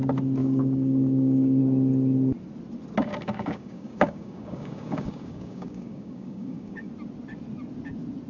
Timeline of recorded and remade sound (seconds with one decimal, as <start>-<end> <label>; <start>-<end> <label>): 0.0-0.4 recorded; 0.4-1.6 remade; 1.6-3.0 recorded; 3.0-6.9 remade; 6.9-8.3 recorded